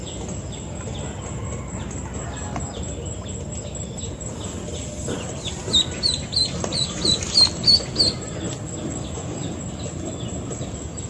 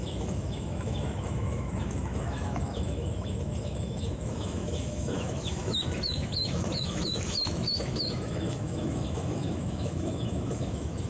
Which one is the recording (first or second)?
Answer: first